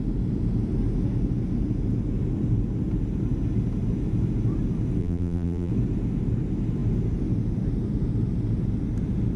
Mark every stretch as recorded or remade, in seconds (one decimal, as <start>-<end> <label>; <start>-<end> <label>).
0.0-5.0 recorded; 5.0-5.7 remade; 5.7-9.4 recorded